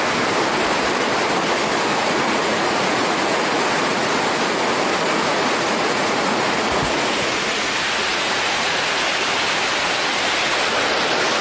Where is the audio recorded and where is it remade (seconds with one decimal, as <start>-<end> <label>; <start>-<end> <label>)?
0.0-1.9 recorded; 1.9-4.2 remade; 4.2-5.2 recorded; 5.2-7.7 remade; 7.7-8.1 recorded; 8.1-8.9 remade; 8.9-11.4 recorded